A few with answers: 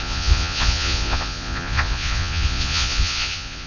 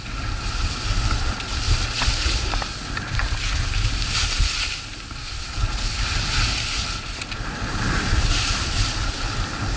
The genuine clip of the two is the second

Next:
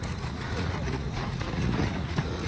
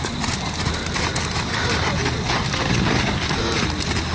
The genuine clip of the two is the second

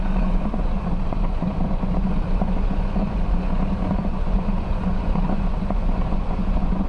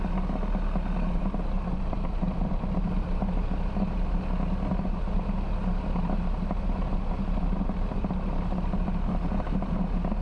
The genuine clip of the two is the second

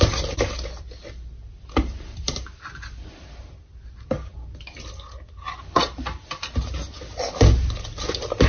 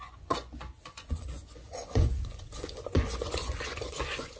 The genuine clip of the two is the first